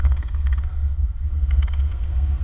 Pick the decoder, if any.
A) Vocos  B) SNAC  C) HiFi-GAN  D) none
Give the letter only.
B